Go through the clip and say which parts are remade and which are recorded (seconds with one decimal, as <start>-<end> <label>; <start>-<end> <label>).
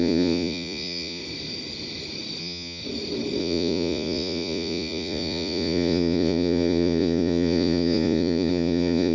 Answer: 0.0-1.2 remade; 1.2-2.4 recorded; 2.4-2.8 remade; 2.8-3.4 recorded; 3.4-9.1 remade